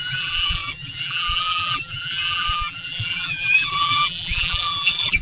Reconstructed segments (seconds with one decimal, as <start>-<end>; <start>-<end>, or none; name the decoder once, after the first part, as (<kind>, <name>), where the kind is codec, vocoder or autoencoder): 0.0-5.2 (vocoder, BigVGAN v2)